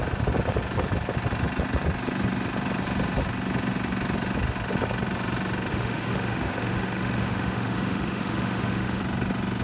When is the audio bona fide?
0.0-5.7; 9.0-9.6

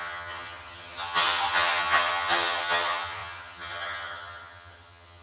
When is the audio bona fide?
none

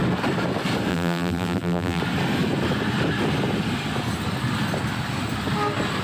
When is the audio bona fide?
0.0-0.9; 2.0-6.0

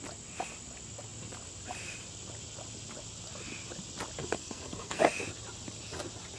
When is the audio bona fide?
0.0-4.2; 5.0-6.4

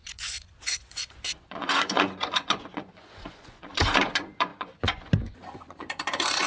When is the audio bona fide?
none

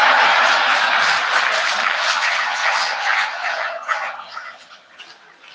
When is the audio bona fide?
0.0-1.8; 5.0-5.5

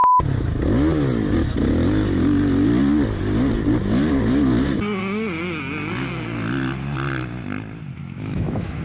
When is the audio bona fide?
0.0-8.0